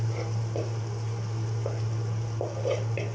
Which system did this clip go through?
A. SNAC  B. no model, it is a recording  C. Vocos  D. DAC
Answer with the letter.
B